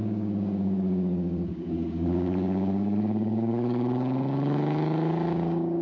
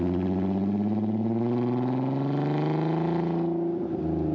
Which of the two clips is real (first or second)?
second